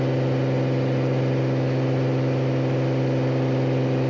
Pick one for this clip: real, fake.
real